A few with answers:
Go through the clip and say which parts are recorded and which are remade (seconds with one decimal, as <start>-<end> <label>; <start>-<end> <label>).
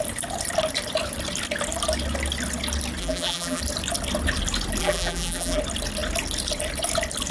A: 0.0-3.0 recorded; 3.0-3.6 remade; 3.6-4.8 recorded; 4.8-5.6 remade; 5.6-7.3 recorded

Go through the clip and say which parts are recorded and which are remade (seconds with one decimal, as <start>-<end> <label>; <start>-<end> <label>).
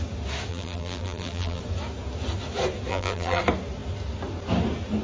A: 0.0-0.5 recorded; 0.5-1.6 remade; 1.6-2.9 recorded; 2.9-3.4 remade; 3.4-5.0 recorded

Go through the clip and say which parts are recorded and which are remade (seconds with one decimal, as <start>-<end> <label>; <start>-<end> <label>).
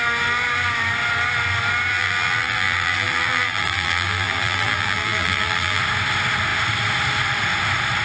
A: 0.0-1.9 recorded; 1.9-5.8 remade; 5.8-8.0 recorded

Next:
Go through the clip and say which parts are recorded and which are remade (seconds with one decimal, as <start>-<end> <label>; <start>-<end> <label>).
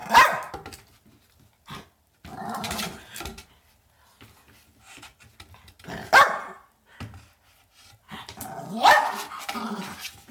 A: 0.0-2.3 recorded; 2.3-2.9 remade; 2.9-10.3 recorded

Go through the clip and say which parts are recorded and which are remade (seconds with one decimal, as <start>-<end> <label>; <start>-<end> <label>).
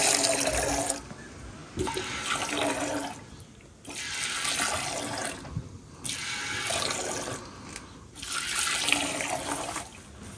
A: 0.0-10.4 recorded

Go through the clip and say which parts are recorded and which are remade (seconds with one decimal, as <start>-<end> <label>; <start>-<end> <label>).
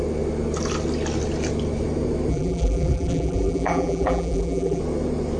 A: 0.0-2.3 recorded; 2.3-4.8 remade; 4.8-5.4 recorded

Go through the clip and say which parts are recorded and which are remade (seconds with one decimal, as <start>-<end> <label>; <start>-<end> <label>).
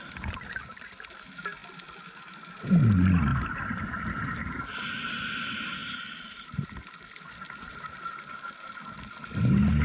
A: 0.0-3.3 recorded; 3.3-3.9 remade; 3.9-5.8 recorded; 5.8-6.7 remade; 6.7-7.7 recorded; 7.7-8.4 remade; 8.4-9.8 recorded